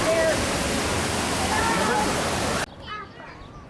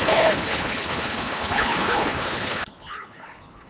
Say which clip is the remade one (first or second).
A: second